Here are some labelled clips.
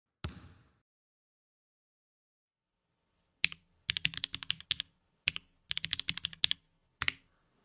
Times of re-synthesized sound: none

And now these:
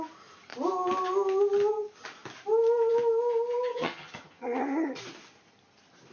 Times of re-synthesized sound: 3.7-5.0 (vocoder, HiFi-GAN)